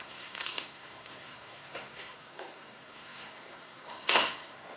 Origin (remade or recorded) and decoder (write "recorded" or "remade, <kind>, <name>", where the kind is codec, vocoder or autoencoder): remade, codec, SNAC